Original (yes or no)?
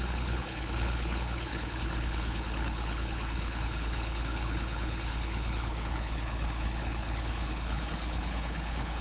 no